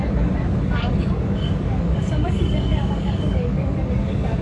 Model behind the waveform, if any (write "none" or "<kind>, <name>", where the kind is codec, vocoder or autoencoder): codec, DAC